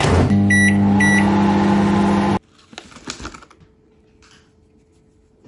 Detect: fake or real real